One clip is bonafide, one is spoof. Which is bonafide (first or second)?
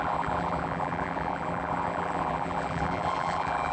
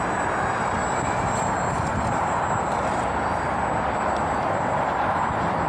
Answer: second